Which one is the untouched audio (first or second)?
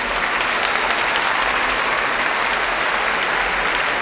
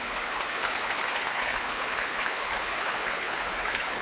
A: first